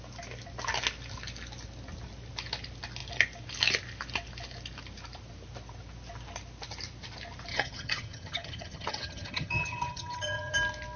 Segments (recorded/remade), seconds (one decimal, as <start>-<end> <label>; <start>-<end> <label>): 0.0-7.5 recorded; 7.5-10.5 remade; 10.5-11.0 recorded